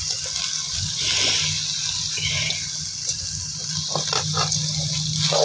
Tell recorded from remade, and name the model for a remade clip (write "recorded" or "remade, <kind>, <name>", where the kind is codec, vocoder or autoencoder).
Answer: recorded